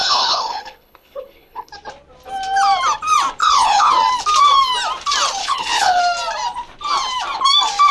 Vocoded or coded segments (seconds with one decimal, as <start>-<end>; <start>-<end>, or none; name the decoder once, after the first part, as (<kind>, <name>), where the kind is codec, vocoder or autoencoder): 0.0-1.7 (codec, HILCodec); 3.4-3.9; 5.4-6.0